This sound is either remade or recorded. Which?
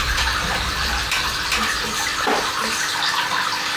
recorded